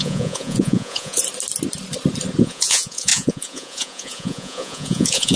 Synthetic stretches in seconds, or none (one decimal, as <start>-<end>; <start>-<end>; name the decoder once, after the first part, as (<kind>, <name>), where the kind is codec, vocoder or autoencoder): 0.0-1.2 (vocoder, Vocos); 2.4-5.4